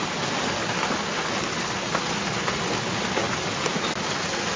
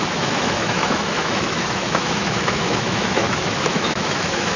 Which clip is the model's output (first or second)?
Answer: second